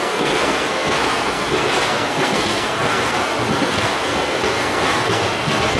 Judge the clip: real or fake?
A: fake